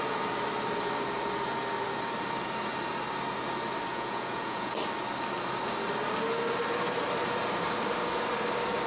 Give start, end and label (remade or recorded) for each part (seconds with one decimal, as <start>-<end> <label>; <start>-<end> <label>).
0.0-3.9 recorded; 3.9-4.7 remade; 4.7-8.9 recorded